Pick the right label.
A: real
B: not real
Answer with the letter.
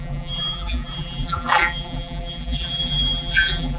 B